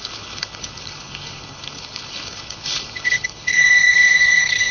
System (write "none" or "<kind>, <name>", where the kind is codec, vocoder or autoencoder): codec, HILCodec